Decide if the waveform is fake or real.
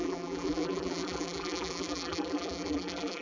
fake